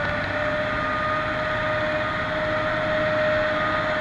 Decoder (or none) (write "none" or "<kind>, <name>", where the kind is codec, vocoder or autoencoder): none